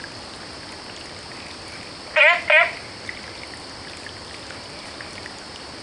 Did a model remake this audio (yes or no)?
no